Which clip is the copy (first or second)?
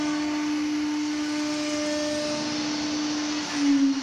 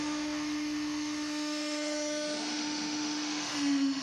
second